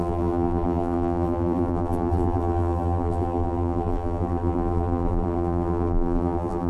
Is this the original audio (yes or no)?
no